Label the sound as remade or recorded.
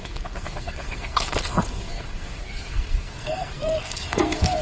remade